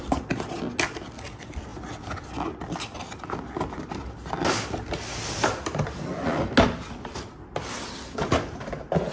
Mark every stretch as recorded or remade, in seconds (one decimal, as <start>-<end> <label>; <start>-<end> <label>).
0.0-9.1 recorded